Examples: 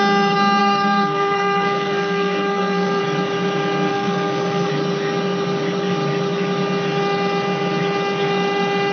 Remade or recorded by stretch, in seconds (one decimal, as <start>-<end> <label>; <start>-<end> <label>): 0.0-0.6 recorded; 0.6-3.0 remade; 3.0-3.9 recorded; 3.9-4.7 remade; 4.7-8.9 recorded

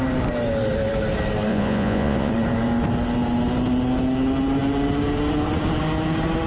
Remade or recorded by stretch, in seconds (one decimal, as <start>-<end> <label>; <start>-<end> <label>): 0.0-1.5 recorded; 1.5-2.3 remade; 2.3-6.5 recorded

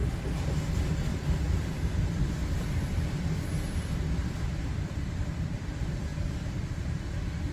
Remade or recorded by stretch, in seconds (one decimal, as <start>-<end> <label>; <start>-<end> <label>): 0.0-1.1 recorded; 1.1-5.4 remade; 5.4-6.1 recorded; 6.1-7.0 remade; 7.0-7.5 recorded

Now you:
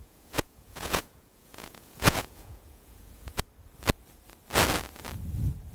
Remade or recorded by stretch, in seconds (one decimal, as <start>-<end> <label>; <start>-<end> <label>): 0.0-3.4 remade; 3.4-5.7 recorded